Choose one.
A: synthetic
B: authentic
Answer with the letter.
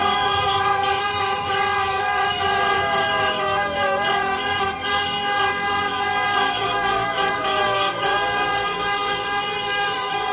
A